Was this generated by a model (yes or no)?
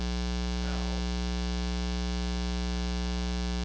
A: no